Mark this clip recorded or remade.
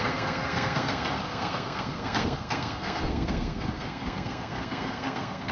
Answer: remade